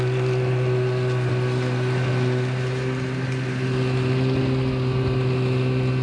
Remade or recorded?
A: recorded